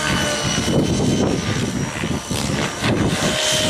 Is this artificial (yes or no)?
no